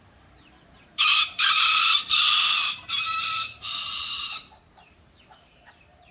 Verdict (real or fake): fake